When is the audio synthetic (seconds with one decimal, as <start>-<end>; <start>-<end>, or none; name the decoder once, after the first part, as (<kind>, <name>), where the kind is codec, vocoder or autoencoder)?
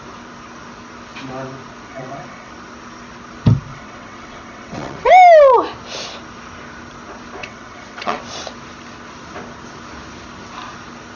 1.9-2.5 (vocoder, WaveNeXt); 3.7-5.1; 7.4-8.2